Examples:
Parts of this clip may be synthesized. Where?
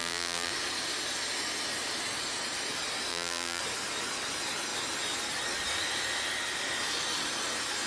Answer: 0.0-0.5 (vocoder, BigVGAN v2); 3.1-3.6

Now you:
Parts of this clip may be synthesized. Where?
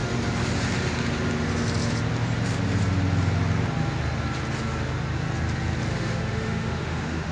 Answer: 5.9-7.3 (autoencoder, DAC-VAE)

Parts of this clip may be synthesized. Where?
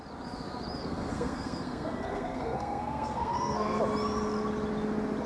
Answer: 0.8-3.8 (codec, SNAC)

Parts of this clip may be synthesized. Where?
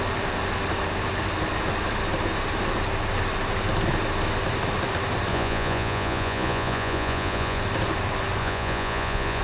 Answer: 5.3-7.6 (vocoder, Vocos); 8.4-9.4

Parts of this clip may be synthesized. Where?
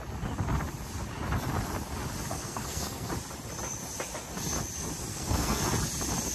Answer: 2.3-3.1 (codec, SNAC); 5.1-5.6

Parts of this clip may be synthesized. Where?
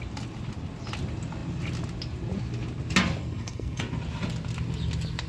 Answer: 3.2-3.8 (codec, SNAC)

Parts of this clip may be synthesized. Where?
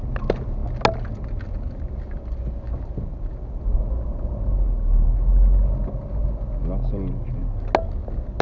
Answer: none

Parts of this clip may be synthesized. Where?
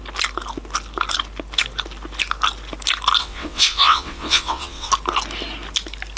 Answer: 3.2-4.9 (vocoder, WaveNeXt)